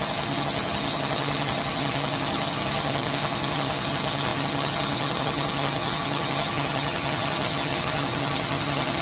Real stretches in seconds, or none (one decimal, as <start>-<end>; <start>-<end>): none